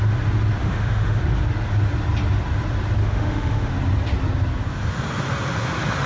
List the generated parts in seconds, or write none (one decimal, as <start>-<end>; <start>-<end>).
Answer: 0.6-1.2; 3.0-3.7